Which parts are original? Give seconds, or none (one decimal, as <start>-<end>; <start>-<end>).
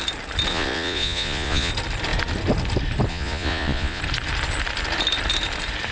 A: 0.0-0.5; 1.7-3.1; 4.0-5.9